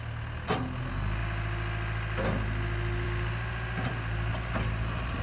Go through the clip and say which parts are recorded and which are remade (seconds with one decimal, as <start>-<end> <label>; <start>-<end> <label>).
0.0-5.2 recorded